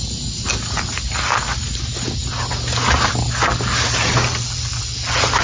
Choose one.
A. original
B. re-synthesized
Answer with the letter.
A